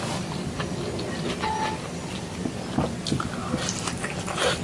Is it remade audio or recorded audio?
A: recorded